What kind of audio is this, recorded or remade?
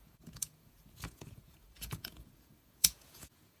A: remade